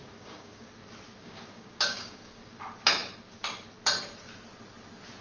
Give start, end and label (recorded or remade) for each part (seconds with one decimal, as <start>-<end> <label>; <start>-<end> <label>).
0.0-0.7 remade; 0.7-1.2 recorded; 1.2-2.5 remade; 2.5-5.2 recorded